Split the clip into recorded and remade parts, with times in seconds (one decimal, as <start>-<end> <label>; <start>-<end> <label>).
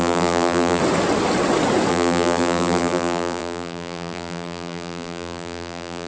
0.0-0.8 remade; 0.8-1.9 recorded; 1.9-6.1 remade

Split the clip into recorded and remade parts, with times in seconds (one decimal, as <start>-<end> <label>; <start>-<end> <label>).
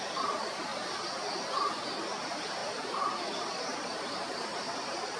0.0-0.7 remade; 0.7-2.0 recorded; 2.0-2.6 remade; 2.6-3.4 recorded; 3.4-5.2 remade